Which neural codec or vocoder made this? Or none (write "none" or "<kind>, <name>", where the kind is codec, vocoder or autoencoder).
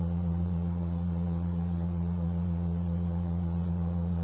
vocoder, Vocos